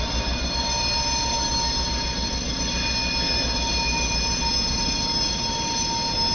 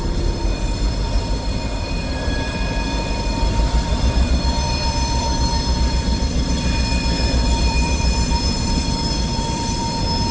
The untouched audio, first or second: first